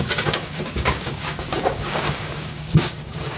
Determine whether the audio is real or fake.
fake